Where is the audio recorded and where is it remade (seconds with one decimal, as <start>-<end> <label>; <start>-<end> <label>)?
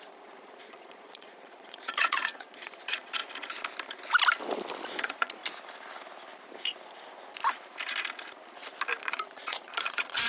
0.0-3.2 remade; 3.2-5.0 recorded; 5.0-5.4 remade; 5.4-9.0 recorded; 9.0-10.3 remade